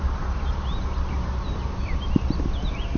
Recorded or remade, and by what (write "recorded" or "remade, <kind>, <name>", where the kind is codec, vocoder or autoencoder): recorded